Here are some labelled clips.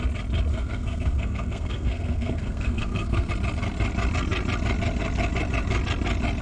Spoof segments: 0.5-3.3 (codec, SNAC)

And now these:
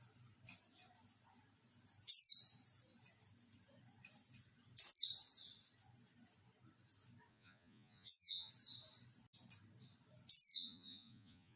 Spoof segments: 7.3-8.5 (vocoder, Vocos); 10.5-11.6

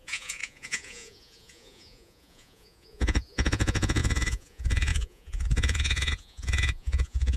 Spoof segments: 0.0-7.4 (vocoder, Vocos)

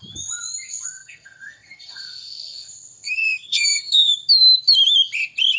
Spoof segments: 0.7-4.1 (codec, SNAC)

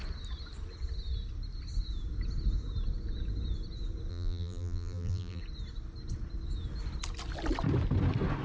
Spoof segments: 4.1-5.4 (vocoder, BigVGAN v2)

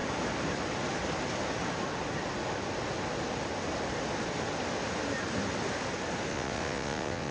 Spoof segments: 6.3-7.3 (vocoder, WaveNeXt)